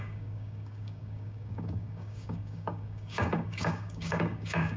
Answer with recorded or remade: remade